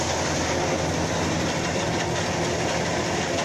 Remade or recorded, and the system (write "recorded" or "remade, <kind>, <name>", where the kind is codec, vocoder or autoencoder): recorded